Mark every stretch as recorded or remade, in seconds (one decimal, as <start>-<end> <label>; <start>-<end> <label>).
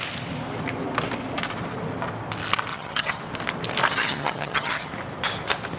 0.0-2.7 recorded; 2.7-3.2 remade; 3.2-3.9 recorded; 3.9-4.9 remade; 4.9-5.8 recorded